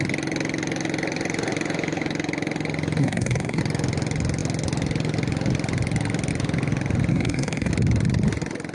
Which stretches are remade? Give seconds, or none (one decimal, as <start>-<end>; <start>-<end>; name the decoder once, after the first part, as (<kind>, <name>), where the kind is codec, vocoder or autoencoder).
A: 3.0-3.6 (codec, SNAC); 7.1-7.7